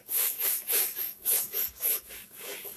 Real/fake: fake